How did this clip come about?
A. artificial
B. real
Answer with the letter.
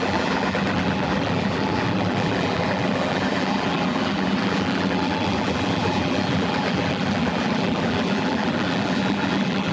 A